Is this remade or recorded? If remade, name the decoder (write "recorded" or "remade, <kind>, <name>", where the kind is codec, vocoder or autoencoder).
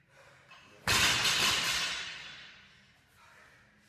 recorded